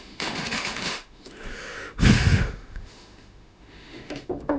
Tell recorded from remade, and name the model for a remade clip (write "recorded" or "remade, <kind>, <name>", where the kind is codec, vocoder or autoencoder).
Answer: remade, autoencoder, DAC-VAE